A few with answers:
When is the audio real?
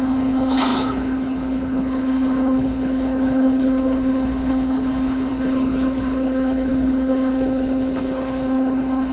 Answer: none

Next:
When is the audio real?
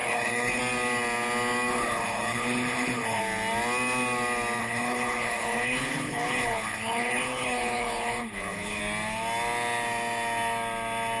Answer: 0.6-1.7; 3.2-4.6; 8.8-11.2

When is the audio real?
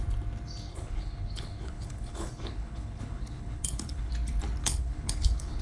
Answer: 0.0-0.7; 4.1-4.6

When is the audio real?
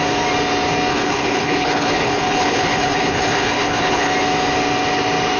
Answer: 0.0-0.9; 4.1-5.4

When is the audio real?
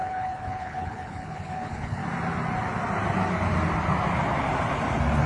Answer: 2.0-5.3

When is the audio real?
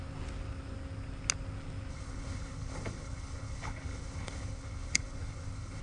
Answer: 0.0-1.9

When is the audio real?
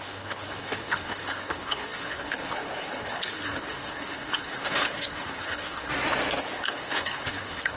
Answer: 5.9-6.4